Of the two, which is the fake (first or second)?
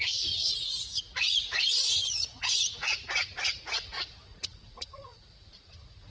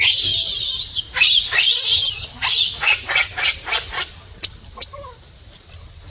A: first